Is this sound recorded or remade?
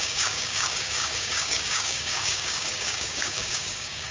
remade